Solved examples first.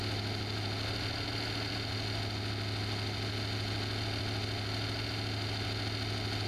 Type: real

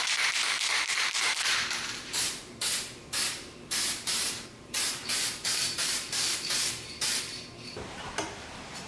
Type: fake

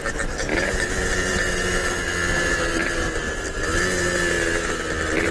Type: real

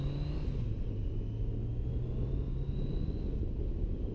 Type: real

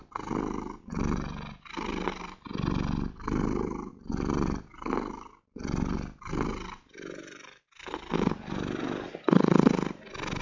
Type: real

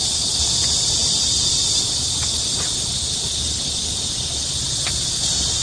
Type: fake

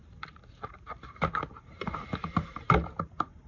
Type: fake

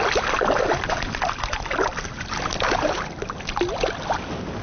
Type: real